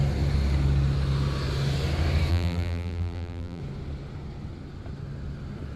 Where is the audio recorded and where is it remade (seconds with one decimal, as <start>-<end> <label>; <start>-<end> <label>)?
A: 0.0-2.3 recorded; 2.3-3.6 remade; 3.6-5.8 recorded